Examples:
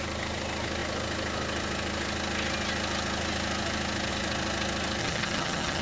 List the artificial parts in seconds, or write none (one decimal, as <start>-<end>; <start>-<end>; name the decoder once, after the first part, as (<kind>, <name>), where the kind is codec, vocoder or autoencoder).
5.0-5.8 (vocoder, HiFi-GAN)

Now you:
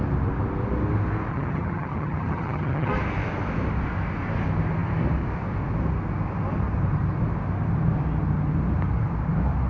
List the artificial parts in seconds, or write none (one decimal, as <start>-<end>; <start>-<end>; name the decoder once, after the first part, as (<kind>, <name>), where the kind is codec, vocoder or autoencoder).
1.3-2.9 (vocoder, HiFi-GAN)

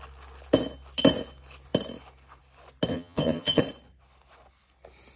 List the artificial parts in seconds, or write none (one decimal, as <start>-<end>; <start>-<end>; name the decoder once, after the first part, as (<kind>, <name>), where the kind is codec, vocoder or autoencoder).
2.9-3.6 (vocoder, HiFi-GAN)